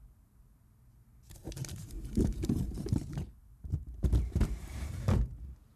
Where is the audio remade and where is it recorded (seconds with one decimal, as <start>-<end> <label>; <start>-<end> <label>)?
0.0-1.4 recorded; 1.4-4.9 remade; 4.9-5.8 recorded